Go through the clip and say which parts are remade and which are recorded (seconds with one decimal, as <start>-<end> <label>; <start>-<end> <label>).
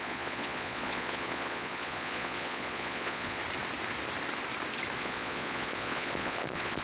0.0-3.4 remade; 3.4-5.0 recorded; 5.0-6.8 remade